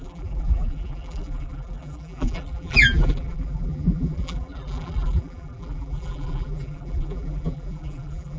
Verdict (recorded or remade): remade